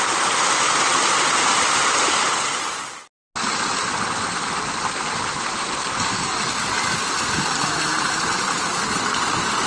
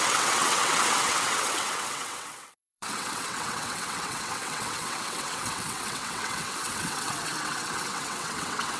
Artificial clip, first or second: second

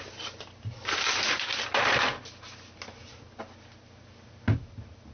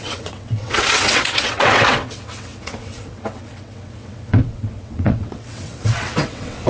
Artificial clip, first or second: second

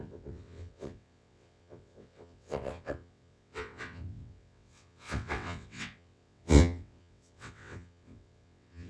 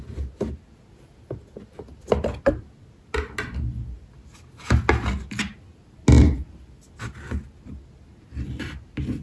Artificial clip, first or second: first